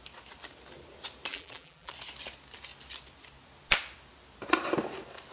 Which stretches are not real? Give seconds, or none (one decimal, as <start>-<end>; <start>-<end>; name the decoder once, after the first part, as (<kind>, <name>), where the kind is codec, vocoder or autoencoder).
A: 1.3-1.9 (vocoder, BigVGAN v2)